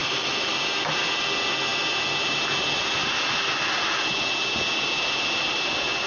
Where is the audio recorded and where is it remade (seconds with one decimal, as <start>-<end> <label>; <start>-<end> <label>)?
0.0-0.5 remade; 0.5-6.1 recorded